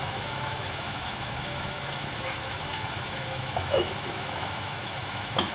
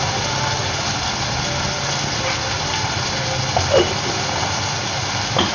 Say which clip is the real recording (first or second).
second